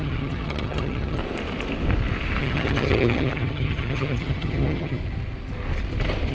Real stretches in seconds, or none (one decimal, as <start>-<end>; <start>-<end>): 1.2-2.4; 5.0-6.3